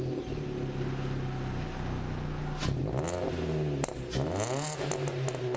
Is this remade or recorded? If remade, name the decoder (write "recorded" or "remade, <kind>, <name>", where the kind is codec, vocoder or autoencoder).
recorded